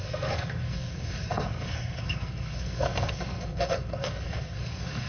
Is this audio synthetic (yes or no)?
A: yes